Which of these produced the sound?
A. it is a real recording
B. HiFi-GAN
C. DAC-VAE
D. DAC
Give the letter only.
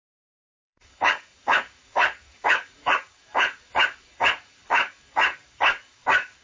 D